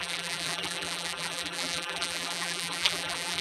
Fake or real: fake